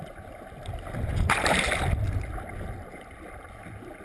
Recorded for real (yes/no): yes